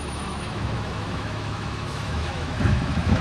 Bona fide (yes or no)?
no